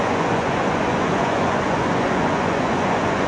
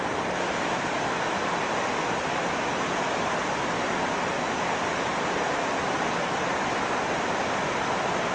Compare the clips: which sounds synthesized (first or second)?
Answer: first